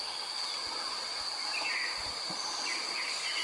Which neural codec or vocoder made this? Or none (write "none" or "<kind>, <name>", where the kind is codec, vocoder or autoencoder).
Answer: none